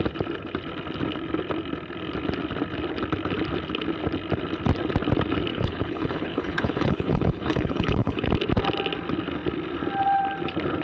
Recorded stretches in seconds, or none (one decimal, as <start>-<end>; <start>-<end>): 0.0-5.5; 8.3-10.8